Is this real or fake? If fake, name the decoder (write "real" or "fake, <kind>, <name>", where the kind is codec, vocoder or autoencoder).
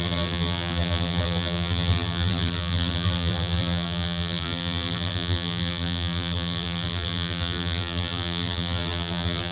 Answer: fake, vocoder, BigVGAN v2